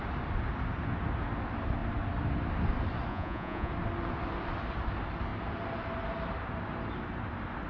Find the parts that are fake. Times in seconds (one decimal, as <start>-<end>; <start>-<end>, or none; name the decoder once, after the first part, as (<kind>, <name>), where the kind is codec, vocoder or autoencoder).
3.1-3.7 (vocoder, Vocos)